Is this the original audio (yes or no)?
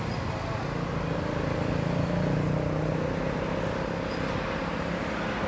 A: yes